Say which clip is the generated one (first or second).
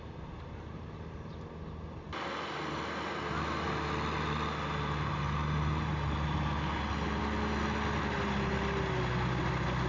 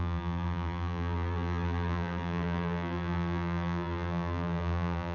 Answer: second